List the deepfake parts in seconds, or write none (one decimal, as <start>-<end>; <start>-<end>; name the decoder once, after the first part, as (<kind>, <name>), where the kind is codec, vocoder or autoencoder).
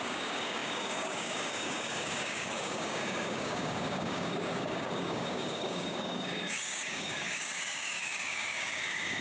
0.0-9.2 (codec, DAC)